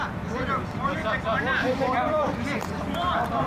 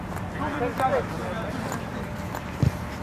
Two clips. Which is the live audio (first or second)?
second